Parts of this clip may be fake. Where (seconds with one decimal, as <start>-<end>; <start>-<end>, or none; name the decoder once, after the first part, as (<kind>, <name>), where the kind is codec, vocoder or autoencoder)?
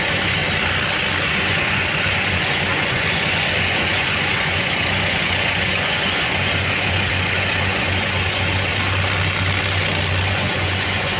0.0-0.4 (vocoder, Vocos); 1.2-8.7; 10.3-11.2